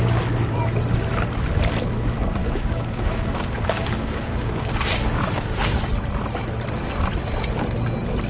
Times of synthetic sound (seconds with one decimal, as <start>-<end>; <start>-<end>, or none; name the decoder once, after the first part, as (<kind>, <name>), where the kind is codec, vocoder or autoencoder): 2.4-5.8 (codec, DAC)